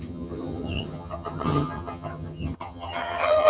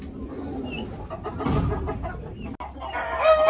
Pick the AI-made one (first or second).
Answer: first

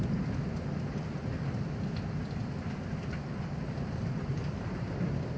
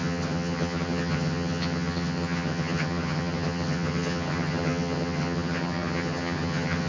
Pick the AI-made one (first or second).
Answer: second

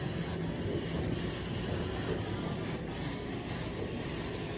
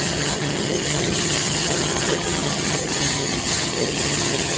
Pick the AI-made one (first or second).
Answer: second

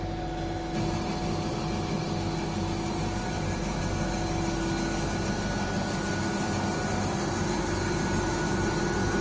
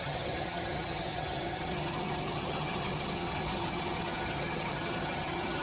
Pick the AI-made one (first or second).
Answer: second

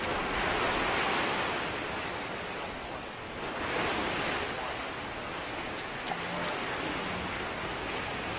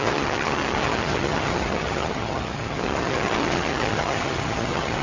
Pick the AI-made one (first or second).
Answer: second